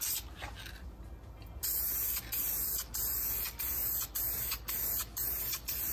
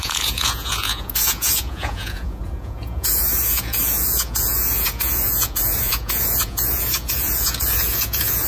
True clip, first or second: first